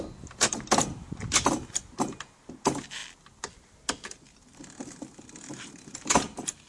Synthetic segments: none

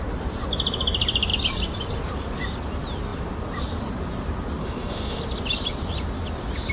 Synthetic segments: 4.6-5.2 (autoencoder, DAC-VAE)

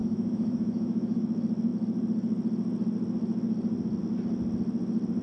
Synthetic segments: 0.0-1.2 (autoencoder, DAC-VAE)